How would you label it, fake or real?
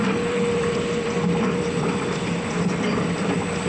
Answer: fake